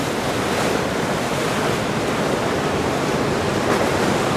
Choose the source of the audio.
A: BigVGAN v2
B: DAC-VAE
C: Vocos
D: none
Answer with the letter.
D